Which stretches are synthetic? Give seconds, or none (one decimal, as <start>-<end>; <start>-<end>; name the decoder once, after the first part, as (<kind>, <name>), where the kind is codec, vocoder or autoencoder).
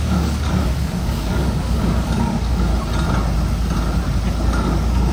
0.0-2.7 (codec, DAC); 4.5-5.1